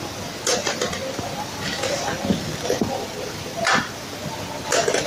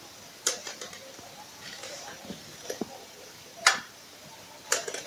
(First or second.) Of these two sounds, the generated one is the second